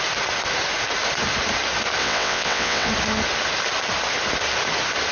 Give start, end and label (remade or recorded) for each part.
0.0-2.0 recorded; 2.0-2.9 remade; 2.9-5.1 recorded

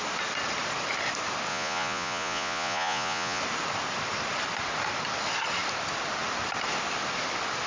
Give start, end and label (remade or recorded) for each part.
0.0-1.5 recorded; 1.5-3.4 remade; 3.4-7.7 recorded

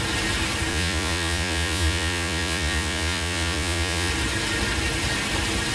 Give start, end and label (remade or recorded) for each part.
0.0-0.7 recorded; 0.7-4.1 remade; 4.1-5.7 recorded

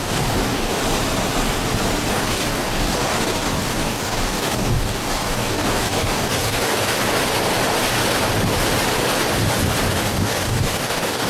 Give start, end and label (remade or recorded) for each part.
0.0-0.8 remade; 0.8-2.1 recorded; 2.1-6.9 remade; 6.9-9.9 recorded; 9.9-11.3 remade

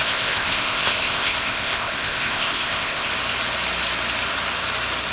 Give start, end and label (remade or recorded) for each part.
0.0-3.1 remade; 3.1-5.1 recorded

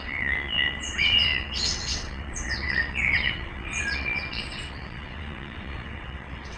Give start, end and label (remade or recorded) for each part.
0.0-6.6 remade